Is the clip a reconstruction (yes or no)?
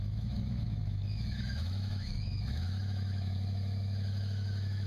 yes